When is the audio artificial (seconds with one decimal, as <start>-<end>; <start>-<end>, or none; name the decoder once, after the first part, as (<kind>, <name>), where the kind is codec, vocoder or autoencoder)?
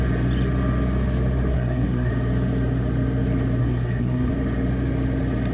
1.5-2.1 (codec, SNAC); 3.6-4.3